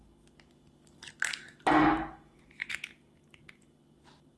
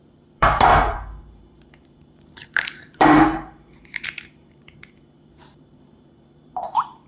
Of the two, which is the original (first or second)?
first